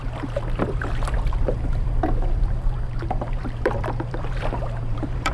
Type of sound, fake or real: fake